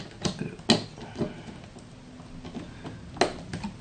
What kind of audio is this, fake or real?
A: real